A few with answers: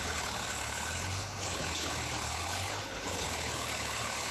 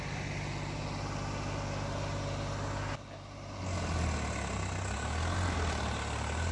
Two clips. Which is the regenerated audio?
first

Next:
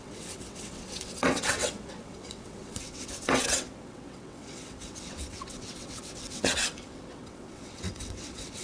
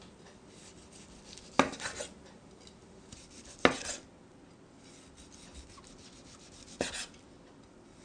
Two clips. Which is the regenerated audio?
first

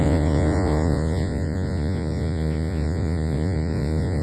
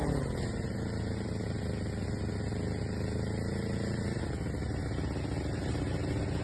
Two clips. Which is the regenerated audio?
first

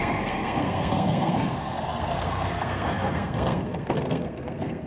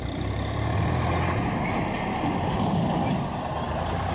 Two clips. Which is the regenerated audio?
first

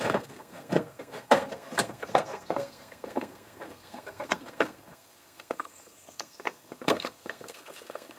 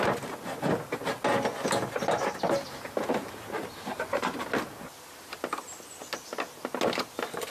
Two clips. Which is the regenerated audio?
first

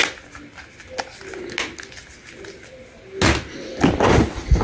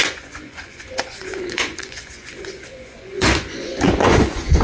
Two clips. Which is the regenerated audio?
second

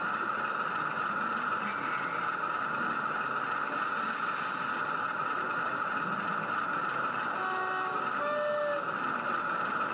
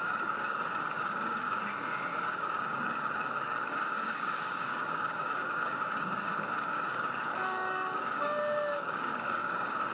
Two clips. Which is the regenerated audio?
second